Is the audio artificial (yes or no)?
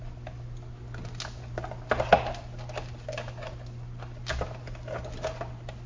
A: no